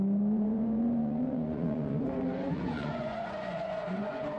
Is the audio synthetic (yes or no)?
yes